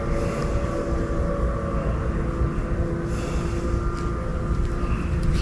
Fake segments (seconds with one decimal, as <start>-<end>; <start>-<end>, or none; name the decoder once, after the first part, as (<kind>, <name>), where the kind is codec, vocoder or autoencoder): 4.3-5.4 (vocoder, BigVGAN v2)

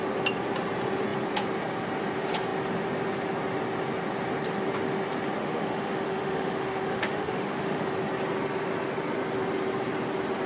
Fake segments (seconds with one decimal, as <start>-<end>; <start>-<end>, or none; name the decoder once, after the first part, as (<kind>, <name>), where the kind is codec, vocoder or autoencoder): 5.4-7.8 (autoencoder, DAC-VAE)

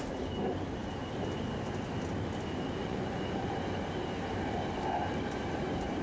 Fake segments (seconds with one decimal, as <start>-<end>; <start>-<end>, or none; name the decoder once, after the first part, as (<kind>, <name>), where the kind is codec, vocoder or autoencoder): 2.8-3.5 (vocoder, Vocos)

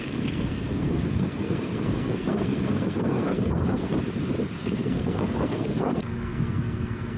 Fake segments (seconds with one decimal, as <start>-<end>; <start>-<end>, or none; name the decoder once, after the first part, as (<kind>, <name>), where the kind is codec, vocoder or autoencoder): 0.0-3.9 (codec, SNAC); 4.6-7.2